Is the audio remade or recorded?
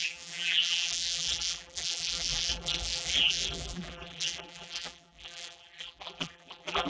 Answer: remade